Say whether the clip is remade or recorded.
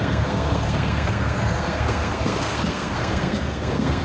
remade